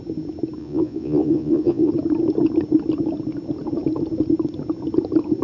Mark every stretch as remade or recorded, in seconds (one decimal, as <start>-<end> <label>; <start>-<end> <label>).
0.0-0.6 recorded; 0.6-1.9 remade; 1.9-5.4 recorded